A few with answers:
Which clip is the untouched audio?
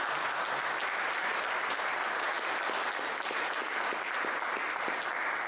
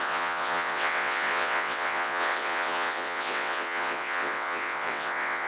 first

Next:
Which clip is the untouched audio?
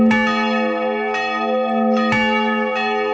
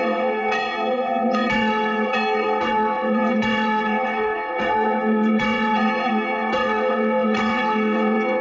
first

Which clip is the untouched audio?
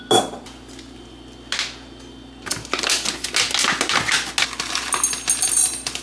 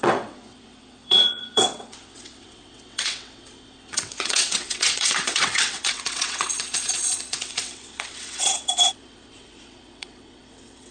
first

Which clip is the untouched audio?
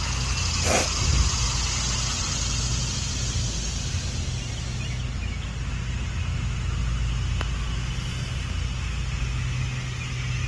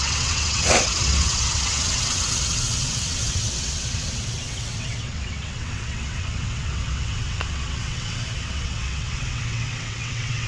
first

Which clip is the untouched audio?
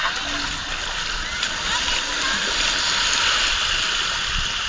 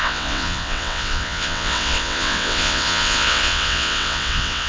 first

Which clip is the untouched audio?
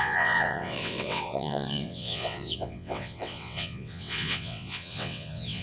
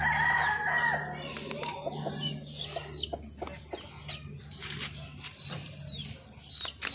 second